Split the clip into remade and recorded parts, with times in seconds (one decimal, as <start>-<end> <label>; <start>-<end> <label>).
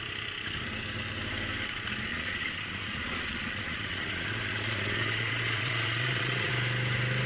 0.0-2.1 recorded; 2.1-6.5 remade; 6.5-7.3 recorded